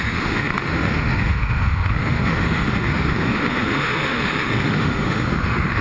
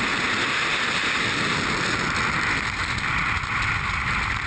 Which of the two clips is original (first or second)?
second